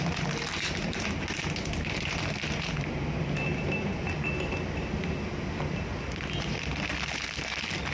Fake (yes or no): no